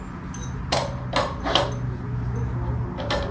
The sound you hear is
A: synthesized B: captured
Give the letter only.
B